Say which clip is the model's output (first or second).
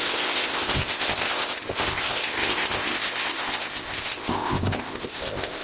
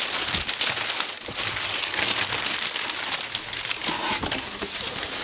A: first